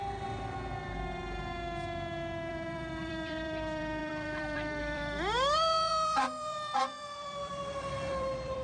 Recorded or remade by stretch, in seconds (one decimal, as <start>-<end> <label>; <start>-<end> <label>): 0.0-2.5 recorded; 2.5-8.6 remade

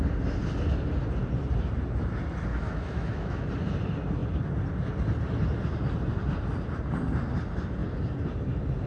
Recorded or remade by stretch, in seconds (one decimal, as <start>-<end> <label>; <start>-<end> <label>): 0.0-2.5 recorded; 2.5-3.5 remade; 3.5-8.9 recorded

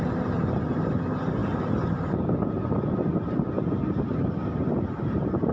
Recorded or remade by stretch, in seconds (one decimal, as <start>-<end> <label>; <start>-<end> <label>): 0.0-5.5 recorded

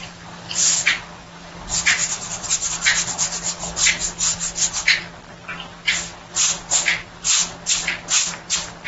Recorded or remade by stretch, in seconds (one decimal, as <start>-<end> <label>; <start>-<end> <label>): 0.0-2.0 recorded; 2.0-2.7 remade; 2.7-8.9 recorded